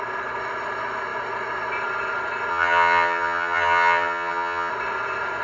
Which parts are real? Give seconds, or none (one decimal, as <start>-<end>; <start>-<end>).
0.0-2.5; 4.7-5.4